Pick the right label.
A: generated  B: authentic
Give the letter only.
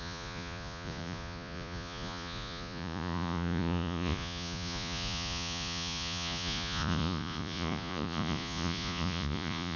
A